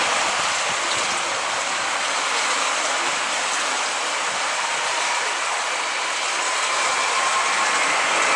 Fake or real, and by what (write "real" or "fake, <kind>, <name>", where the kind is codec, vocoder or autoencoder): fake, vocoder, BigVGAN v2